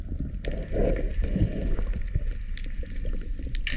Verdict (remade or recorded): recorded